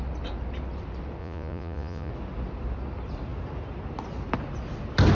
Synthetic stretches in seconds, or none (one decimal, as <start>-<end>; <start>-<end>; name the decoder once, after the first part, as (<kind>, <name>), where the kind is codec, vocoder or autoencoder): 1.2-2.1 (vocoder, Vocos)